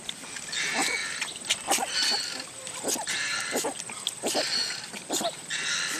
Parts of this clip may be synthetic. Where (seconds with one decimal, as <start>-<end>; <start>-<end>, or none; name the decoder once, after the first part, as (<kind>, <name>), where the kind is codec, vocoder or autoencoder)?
none